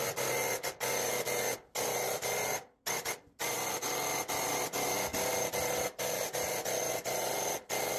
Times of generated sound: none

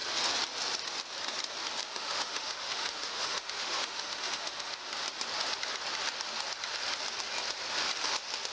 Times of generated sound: 1.8-4.9 (autoencoder, DAC-VAE)